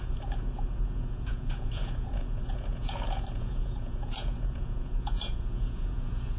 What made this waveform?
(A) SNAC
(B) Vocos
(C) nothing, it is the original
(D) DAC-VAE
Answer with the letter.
B